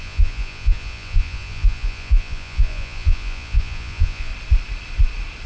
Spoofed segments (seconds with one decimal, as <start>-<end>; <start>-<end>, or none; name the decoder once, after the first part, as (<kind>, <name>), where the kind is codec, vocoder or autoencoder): 0.0-4.3 (vocoder, Vocos)